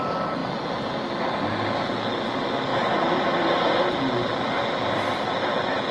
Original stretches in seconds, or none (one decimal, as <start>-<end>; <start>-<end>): 0.0-2.7; 3.5-5.9